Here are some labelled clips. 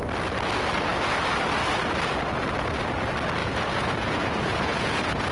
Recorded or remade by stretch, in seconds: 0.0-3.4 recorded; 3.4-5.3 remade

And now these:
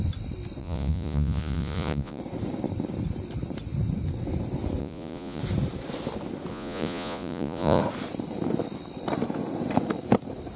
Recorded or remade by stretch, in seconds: 0.0-0.6 recorded; 0.6-2.2 remade; 2.2-4.8 recorded; 4.8-5.4 remade; 5.4-6.5 recorded; 6.5-7.8 remade; 7.8-10.6 recorded